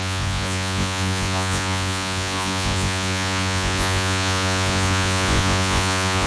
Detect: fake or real fake